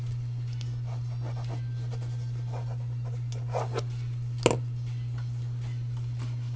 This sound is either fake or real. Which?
real